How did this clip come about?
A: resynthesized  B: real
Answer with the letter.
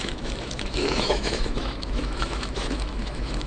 A